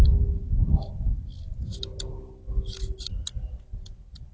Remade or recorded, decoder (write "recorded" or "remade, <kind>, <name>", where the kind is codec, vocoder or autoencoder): recorded